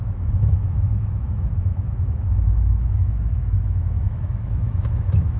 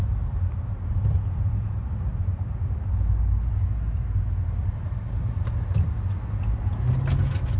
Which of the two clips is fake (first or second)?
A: first